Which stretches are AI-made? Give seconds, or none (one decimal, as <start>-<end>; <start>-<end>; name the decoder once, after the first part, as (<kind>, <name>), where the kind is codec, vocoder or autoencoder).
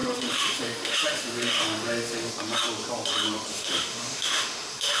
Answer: 0.0-2.3 (autoencoder, DAC-VAE); 3.5-5.0